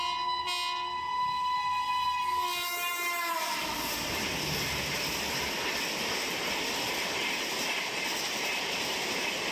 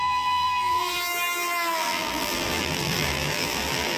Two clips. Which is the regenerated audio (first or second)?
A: second